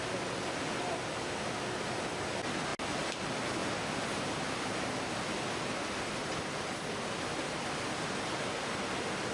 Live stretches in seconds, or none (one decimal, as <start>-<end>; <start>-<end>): 0.0-9.3